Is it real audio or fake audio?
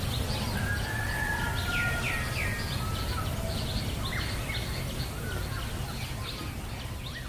real